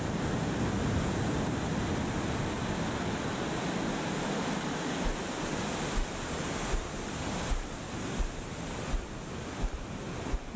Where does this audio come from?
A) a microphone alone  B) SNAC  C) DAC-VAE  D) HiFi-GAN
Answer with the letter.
A